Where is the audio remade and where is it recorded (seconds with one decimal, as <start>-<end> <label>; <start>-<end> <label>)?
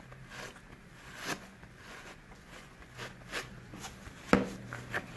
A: 0.0-0.8 recorded; 0.8-3.9 remade; 3.9-5.2 recorded